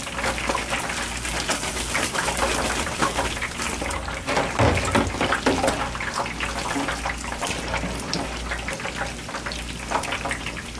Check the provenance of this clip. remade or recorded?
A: recorded